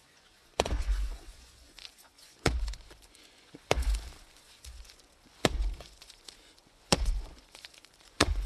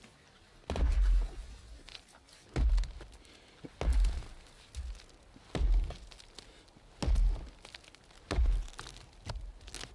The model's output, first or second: first